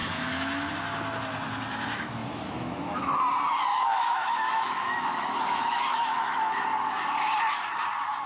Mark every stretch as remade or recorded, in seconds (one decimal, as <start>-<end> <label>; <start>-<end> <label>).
0.0-0.7 remade; 0.7-2.2 recorded; 2.2-3.2 remade; 3.2-3.7 recorded; 3.7-6.6 remade; 6.6-8.3 recorded